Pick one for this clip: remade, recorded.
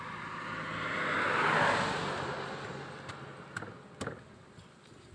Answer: recorded